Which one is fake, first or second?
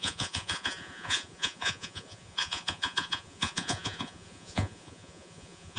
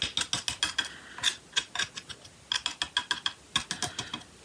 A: first